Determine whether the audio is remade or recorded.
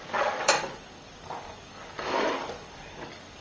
remade